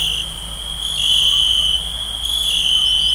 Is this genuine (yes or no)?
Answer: yes